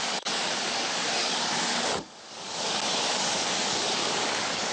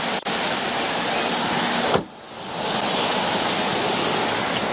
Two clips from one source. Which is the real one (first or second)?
second